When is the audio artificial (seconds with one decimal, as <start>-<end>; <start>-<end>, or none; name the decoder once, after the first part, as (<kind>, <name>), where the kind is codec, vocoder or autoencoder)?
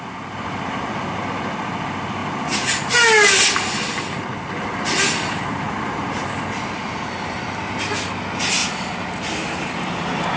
none